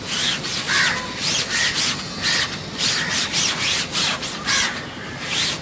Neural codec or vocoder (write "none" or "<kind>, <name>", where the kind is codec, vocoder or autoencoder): none